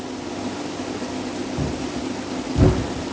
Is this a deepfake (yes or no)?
no